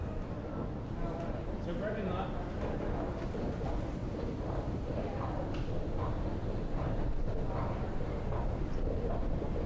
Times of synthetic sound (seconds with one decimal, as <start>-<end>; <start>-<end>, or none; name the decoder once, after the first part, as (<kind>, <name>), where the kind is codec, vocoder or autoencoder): none